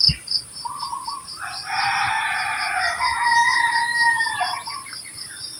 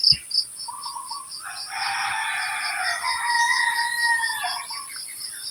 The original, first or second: second